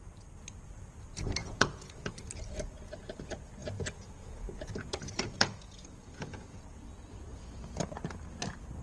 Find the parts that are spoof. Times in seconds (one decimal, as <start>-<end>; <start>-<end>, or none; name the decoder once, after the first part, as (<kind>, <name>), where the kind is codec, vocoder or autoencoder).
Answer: 1.4-2.1 (vocoder, Vocos); 3.6-6.8; 7.3-8.2